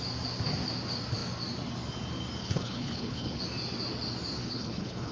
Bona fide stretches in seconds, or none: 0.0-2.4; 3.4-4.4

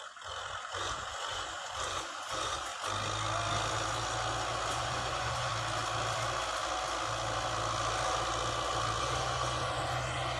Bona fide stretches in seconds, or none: 2.7-4.7; 5.5-9.0

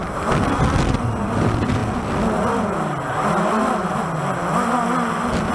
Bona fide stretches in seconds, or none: 0.0-5.5